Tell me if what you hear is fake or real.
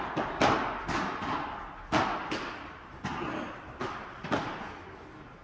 real